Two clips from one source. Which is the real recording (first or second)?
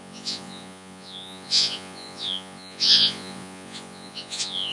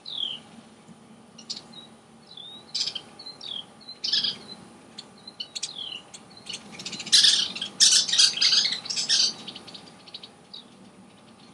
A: second